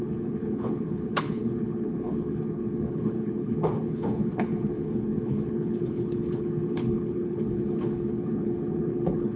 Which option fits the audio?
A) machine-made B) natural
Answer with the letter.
A